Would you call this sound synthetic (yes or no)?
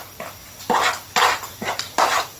no